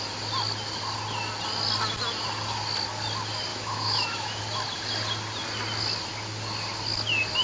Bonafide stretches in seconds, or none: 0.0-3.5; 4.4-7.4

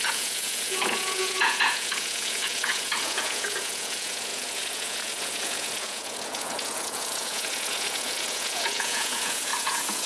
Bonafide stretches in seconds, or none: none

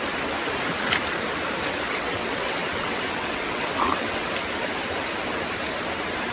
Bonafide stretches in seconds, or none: 0.0-1.9; 4.3-6.3

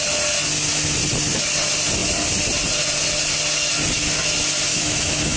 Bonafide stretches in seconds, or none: 0.0-4.7

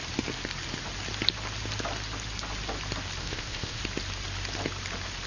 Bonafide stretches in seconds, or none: 0.0-3.2; 3.8-5.3